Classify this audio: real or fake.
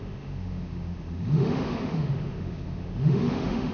fake